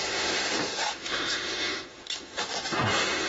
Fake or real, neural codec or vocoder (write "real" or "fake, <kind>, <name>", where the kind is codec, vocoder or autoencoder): fake, autoencoder, DAC-VAE